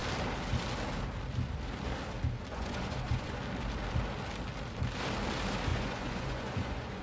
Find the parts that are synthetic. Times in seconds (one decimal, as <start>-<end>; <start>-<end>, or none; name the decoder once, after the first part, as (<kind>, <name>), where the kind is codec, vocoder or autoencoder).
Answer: 2.5-3.4 (vocoder, Vocos); 5.7-7.0